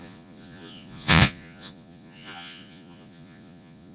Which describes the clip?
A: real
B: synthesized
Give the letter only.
B